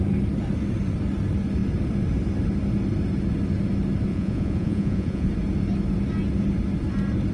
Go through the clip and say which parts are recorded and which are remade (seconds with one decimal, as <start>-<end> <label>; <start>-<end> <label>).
0.0-4.1 recorded; 4.1-5.3 remade; 5.3-7.3 recorded